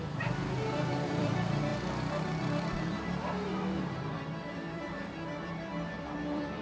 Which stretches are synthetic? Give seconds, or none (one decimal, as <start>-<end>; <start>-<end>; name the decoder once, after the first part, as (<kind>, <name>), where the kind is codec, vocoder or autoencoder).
0.0-1.7 (vocoder, BigVGAN v2); 2.6-6.6